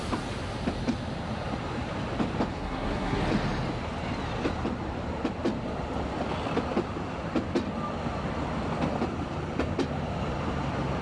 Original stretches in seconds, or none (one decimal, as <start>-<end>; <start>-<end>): 0.0-2.5; 3.2-11.0